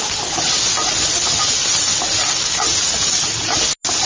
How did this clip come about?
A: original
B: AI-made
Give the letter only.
A